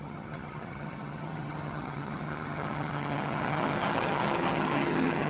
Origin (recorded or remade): remade